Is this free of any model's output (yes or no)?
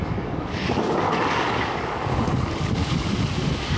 no